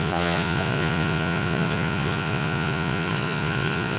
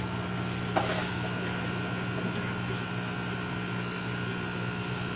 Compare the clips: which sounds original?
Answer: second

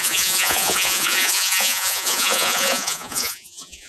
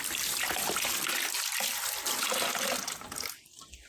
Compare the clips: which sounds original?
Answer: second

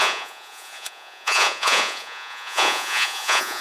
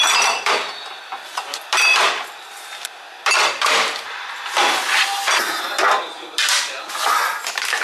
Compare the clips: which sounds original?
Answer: second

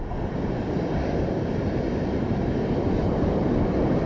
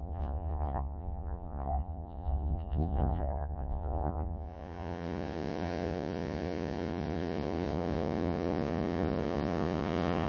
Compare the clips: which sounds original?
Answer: first